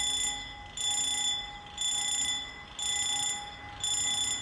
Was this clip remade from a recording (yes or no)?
no